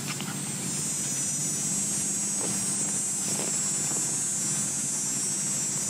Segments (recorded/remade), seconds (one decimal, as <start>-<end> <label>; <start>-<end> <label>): 0.0-5.9 recorded